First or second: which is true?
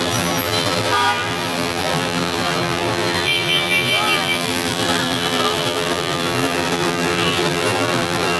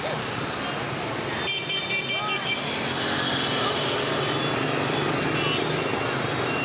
second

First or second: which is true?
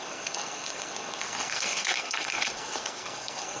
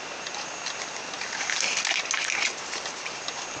second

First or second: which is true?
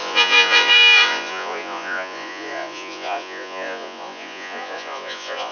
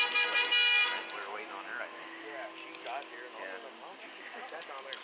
second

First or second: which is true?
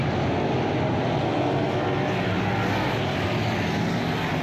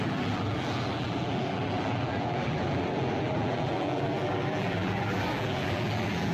first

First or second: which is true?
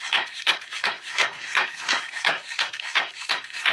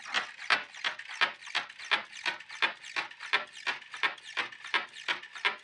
second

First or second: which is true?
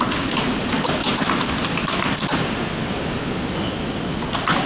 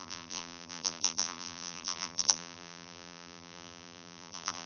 first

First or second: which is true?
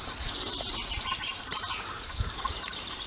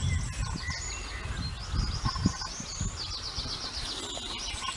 second